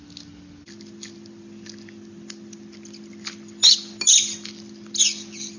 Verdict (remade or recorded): recorded